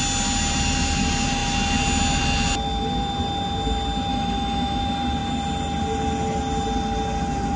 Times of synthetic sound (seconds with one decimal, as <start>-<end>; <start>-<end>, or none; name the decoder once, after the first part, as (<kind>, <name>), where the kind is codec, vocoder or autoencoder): 4.1-4.8 (autoencoder, DAC-VAE)